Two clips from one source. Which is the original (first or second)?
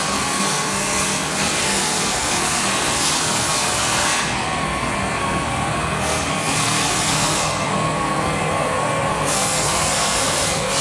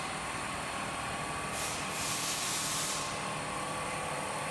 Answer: second